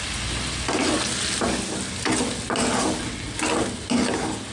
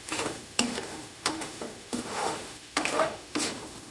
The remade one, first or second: second